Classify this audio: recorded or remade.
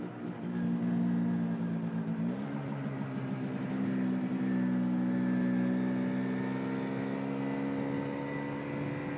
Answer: recorded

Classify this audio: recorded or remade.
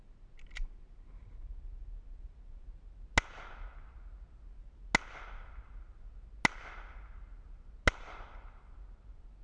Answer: recorded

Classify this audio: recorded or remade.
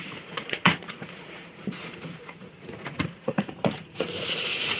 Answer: remade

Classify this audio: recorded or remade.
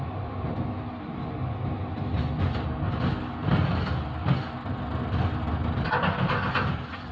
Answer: recorded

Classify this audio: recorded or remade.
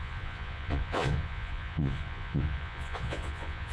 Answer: remade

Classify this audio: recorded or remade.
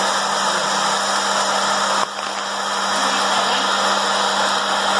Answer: recorded